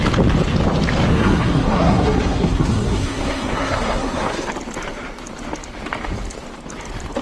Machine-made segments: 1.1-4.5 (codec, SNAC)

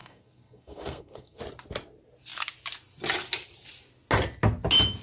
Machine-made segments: 0.0-1.4 (codec, SNAC)

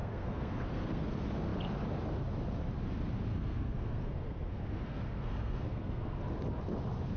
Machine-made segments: 0.0-1.1 (codec, SNAC); 3.3-6.2

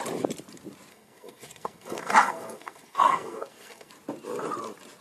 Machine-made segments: 0.9-3.9 (codec, SNAC)